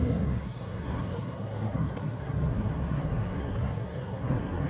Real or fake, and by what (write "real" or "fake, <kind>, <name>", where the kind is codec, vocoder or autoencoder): fake, codec, SNAC